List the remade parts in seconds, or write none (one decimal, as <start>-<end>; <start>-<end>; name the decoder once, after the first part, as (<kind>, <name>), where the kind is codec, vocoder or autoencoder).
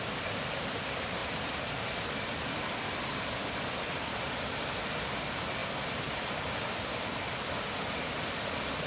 1.2-2.0 (vocoder, BigVGAN v2)